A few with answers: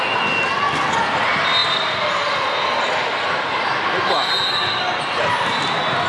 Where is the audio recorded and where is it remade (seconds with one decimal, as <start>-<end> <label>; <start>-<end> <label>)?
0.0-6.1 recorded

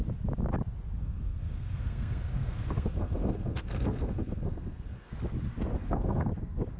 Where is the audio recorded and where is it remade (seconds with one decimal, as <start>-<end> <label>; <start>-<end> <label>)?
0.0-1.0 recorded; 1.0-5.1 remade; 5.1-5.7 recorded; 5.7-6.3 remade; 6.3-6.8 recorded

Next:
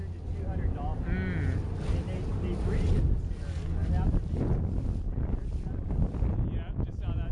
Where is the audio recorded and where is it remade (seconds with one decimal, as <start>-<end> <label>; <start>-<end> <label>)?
0.0-7.3 recorded

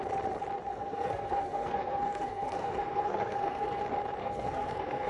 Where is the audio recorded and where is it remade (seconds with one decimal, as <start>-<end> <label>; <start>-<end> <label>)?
0.0-0.7 recorded; 0.7-3.8 remade; 3.8-4.2 recorded; 4.2-5.1 remade

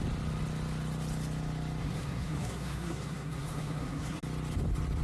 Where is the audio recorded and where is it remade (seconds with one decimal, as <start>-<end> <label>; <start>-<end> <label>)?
0.0-1.8 recorded; 1.8-4.2 remade; 4.2-5.0 recorded